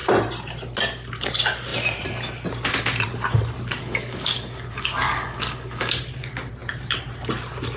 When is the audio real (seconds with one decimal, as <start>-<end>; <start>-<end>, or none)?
0.0-3.8; 5.9-7.8